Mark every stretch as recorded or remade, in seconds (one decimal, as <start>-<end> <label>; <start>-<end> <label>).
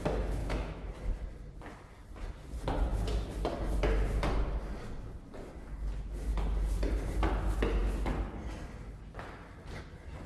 0.0-0.4 recorded; 0.4-0.9 remade; 0.9-10.3 recorded